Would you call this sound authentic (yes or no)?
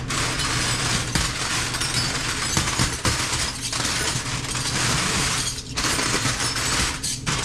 yes